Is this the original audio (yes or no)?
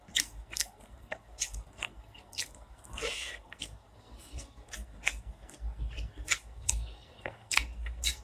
no